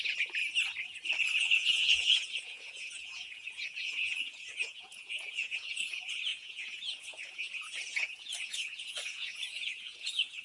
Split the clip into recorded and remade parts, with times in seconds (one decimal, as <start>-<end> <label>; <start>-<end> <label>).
0.0-0.4 remade; 0.4-1.4 recorded; 1.4-10.4 remade